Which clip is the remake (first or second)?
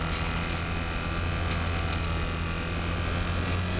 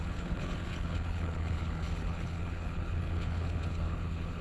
second